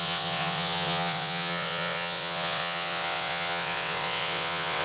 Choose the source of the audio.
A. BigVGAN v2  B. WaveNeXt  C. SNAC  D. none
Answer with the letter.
B